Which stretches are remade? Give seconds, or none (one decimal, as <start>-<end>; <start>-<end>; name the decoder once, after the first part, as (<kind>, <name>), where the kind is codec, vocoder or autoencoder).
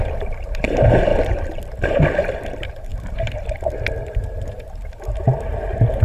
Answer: none